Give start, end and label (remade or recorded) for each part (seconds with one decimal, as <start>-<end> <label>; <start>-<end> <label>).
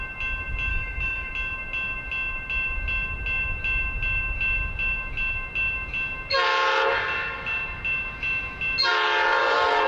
0.0-0.7 recorded; 0.7-1.3 remade; 1.3-9.9 recorded